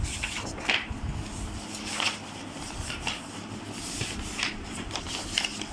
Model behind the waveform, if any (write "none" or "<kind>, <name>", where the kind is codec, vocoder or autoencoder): none